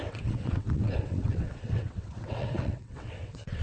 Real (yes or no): no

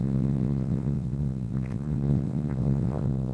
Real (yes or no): no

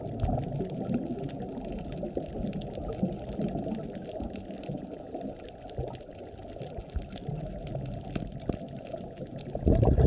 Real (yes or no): yes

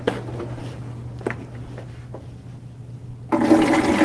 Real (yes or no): yes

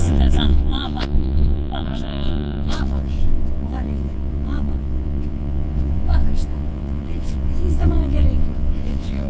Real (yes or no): no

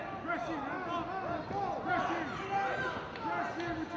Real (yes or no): yes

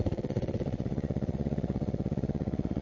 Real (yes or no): no